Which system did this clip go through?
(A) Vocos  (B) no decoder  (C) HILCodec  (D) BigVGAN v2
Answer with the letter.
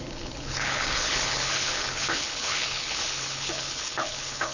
C